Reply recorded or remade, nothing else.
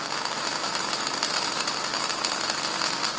recorded